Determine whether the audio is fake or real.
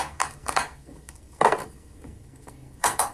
fake